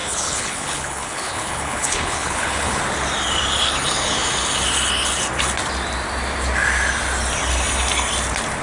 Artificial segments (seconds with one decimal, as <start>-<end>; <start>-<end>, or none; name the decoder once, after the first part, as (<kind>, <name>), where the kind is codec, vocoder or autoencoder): 0.0-2.8 (codec, HILCodec)